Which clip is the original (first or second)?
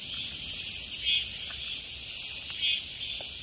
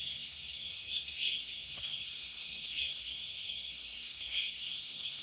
first